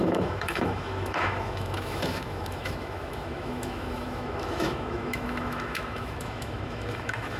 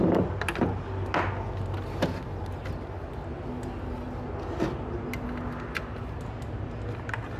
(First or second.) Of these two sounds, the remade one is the first